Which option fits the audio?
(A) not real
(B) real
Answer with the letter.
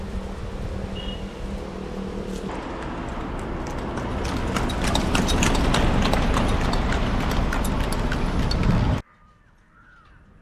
B